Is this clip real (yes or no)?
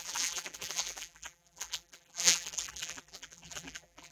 no